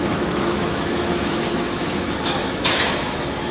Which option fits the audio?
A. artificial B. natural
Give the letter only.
A